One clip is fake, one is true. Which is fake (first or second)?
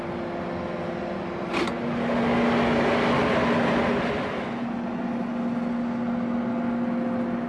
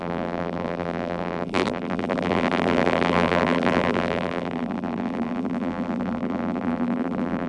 second